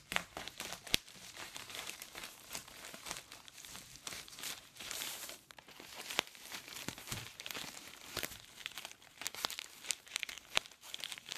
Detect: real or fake fake